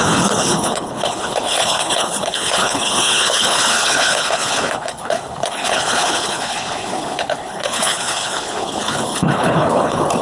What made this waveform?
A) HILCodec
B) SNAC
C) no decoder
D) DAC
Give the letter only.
A